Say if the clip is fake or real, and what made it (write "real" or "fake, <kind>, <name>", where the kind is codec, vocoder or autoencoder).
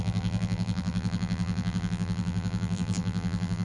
fake, vocoder, BigVGAN v2